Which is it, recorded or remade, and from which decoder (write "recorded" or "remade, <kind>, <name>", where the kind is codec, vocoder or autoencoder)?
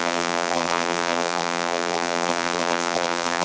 remade, vocoder, BigVGAN v2